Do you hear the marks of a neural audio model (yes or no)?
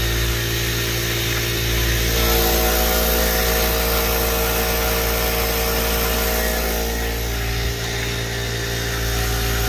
no